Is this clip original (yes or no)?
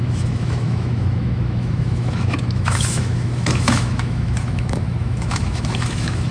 no